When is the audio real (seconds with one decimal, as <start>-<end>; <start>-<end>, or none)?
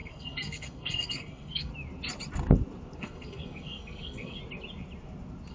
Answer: 1.7-3.0; 4.4-5.5